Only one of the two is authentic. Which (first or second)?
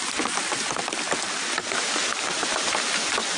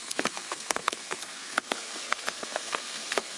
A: first